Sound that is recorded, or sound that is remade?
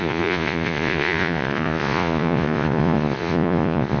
remade